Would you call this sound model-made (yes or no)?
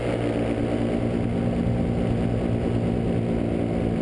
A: no